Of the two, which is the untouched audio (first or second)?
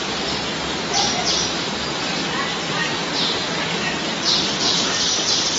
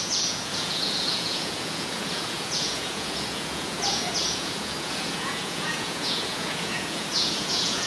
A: first